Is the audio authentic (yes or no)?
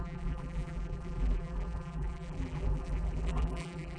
no